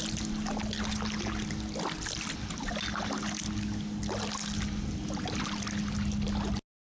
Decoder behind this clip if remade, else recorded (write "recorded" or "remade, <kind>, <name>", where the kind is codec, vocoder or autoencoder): recorded